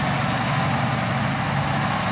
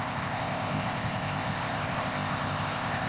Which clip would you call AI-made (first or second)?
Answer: second